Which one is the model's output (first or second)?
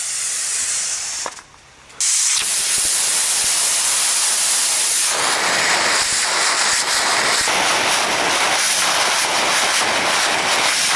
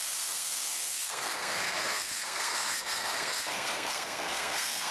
second